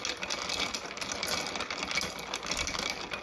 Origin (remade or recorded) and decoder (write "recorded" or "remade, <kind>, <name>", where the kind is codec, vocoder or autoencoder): recorded